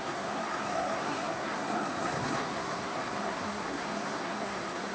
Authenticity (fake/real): fake